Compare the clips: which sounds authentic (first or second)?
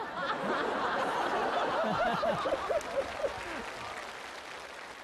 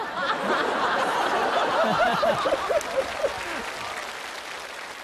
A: first